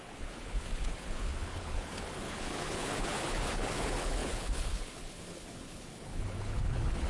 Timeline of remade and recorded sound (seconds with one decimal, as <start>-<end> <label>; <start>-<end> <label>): 0.0-7.1 remade